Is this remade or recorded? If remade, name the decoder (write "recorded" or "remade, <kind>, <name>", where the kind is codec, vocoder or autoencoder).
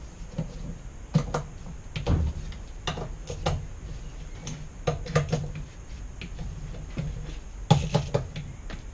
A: recorded